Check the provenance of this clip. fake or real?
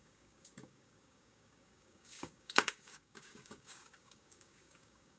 fake